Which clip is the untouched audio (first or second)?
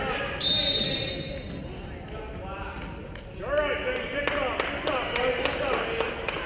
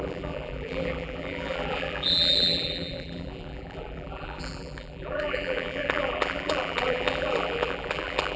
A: first